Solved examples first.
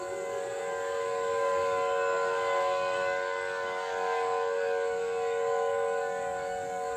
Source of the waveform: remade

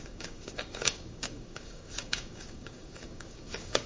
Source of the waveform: remade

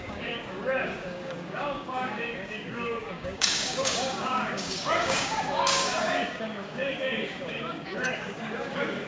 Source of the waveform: remade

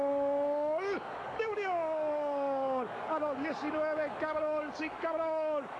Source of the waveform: remade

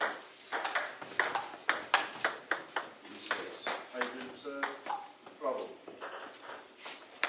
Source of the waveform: recorded